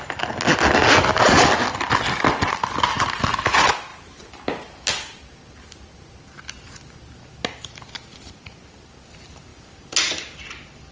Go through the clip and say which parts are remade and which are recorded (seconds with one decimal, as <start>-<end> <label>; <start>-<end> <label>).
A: 0.0-3.9 recorded; 3.9-4.6 remade; 4.6-9.5 recorded; 9.5-10.4 remade; 10.4-10.9 recorded